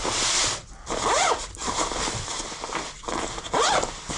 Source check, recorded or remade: remade